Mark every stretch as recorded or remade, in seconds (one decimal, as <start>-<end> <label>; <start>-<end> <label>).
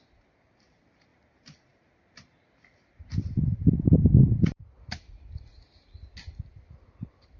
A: 0.0-1.1 recorded; 1.1-5.4 remade; 5.4-7.4 recorded